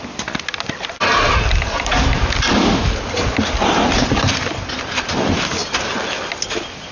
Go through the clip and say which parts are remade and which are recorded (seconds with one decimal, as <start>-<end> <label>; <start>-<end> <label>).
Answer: 0.0-6.9 recorded